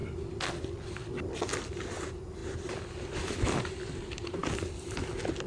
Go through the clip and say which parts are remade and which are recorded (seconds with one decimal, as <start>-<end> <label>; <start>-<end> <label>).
0.0-5.5 recorded